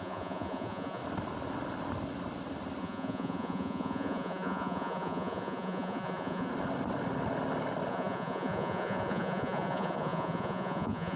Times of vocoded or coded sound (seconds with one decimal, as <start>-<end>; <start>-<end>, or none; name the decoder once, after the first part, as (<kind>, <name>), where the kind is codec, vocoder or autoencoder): 0.0-1.0 (vocoder, Vocos); 2.8-6.5; 7.9-11.2